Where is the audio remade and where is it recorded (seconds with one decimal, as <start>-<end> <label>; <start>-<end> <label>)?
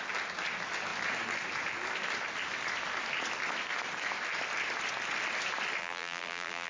0.0-5.8 recorded; 5.8-6.7 remade